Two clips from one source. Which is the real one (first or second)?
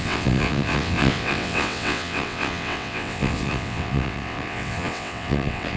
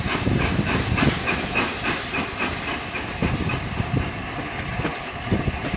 second